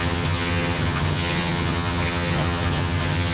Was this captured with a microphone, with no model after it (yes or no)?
no